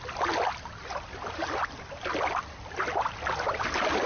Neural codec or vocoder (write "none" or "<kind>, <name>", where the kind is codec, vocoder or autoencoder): none